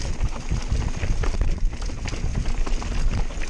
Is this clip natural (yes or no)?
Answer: yes